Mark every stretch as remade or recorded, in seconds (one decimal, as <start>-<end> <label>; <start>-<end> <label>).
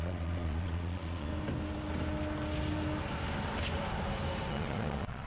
0.0-1.3 remade; 1.3-4.5 recorded; 4.5-5.3 remade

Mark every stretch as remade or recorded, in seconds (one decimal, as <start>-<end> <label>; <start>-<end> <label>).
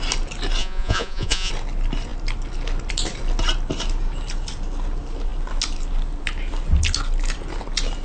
0.0-0.6 recorded; 0.6-1.5 remade; 1.5-8.0 recorded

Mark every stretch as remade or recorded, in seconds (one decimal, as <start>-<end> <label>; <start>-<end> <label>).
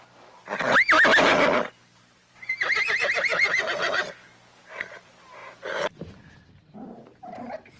0.0-0.4 remade; 0.4-2.0 recorded; 2.0-4.3 remade; 4.3-5.0 recorded; 5.0-7.8 remade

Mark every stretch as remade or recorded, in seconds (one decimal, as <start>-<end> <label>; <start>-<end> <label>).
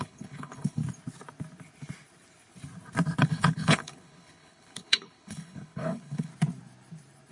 0.0-0.8 remade; 0.8-3.2 recorded; 3.2-6.3 remade; 6.3-7.3 recorded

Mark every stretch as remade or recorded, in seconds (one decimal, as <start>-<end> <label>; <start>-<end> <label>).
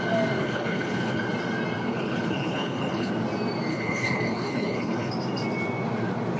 0.0-0.4 recorded; 0.4-1.2 remade; 1.2-1.9 recorded; 1.9-3.1 remade; 3.1-3.7 recorded; 3.7-5.1 remade; 5.1-6.4 recorded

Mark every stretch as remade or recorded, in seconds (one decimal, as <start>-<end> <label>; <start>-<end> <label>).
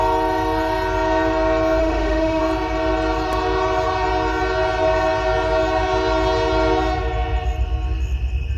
0.0-1.8 recorded; 1.8-2.4 remade; 2.4-8.6 recorded